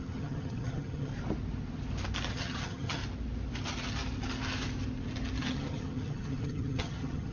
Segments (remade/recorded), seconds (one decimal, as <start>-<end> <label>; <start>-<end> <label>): 0.0-1.1 remade; 1.1-2.3 recorded; 2.3-3.0 remade; 3.0-5.4 recorded; 5.4-7.3 remade